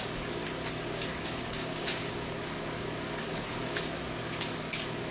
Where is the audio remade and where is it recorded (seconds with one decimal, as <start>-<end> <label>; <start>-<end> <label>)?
0.0-0.4 remade; 0.4-0.9 recorded; 0.9-5.1 remade